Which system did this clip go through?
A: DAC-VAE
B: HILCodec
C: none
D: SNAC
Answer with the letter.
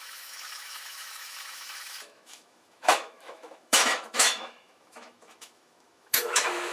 A